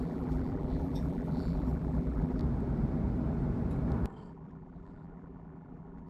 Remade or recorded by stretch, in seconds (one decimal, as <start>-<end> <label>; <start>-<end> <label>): 0.0-2.4 remade; 2.4-4.3 recorded; 4.3-6.1 remade